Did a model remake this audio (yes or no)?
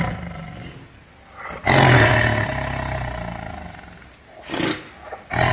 no